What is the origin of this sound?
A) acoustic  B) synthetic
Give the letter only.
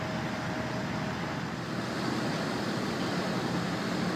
A